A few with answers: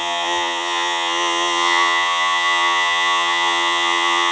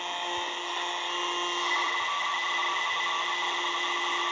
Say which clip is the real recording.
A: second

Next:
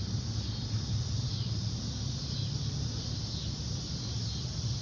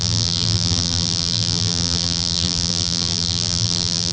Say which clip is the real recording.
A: first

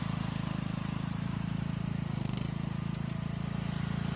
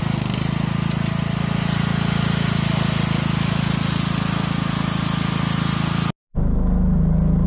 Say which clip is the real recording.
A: second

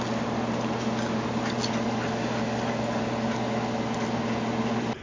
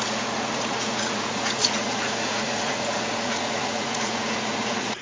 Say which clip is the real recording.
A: first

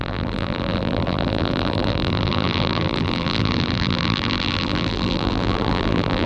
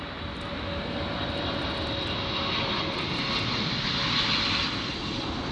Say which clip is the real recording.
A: second